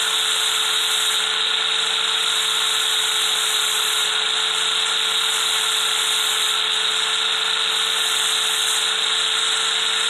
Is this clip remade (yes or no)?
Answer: no